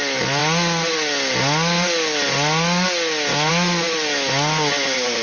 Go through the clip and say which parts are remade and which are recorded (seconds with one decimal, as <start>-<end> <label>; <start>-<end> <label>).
0.0-5.2 recorded